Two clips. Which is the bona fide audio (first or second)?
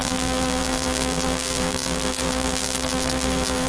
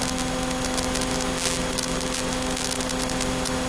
second